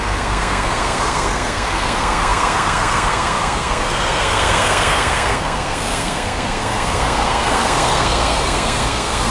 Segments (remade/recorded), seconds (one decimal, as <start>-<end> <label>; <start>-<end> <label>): 0.0-9.3 remade